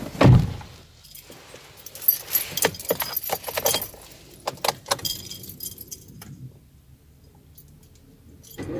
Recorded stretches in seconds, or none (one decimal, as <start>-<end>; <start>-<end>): 0.0-8.8